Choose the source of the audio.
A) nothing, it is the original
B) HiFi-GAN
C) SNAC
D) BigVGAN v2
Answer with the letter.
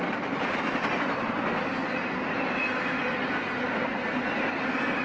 A